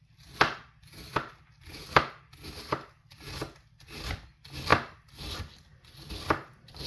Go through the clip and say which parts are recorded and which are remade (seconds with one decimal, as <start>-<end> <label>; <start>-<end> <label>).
0.0-6.9 recorded